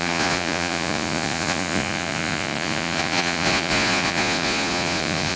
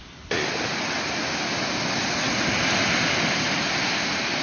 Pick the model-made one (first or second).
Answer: first